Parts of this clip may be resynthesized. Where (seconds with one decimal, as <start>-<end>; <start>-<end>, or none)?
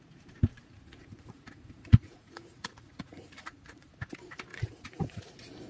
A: 0.5-3.9; 4.5-5.2